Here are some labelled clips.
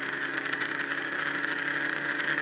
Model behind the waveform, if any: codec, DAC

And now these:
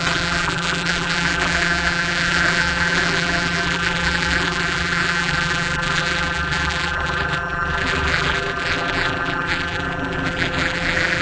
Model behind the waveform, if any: vocoder, BigVGAN v2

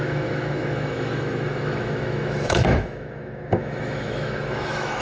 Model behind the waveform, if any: autoencoder, DAC-VAE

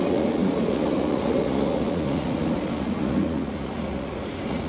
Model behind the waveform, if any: vocoder, Vocos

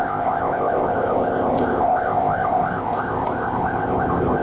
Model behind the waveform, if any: codec, ZipCodec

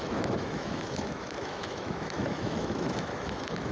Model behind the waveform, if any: autoencoder, DAC-VAE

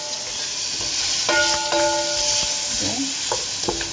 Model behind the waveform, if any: none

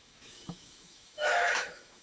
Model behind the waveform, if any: autoencoder, DAC-VAE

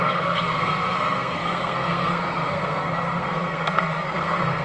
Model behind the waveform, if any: codec, SNAC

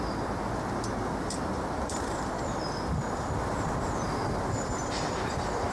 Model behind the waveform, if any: vocoder, BigVGAN v2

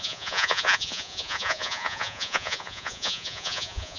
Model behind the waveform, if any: vocoder, Vocos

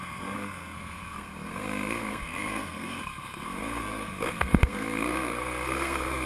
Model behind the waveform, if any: codec, SNAC